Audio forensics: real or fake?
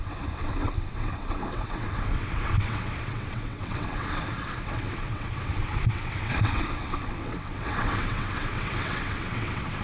fake